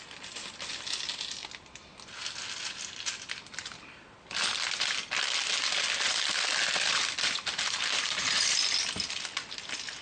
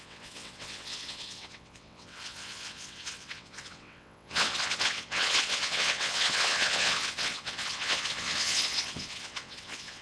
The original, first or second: first